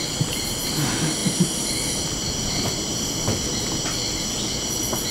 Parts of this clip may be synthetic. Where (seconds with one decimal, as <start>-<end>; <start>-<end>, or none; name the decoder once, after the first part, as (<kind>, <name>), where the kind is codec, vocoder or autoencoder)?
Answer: 1.2-3.8 (vocoder, BigVGAN v2)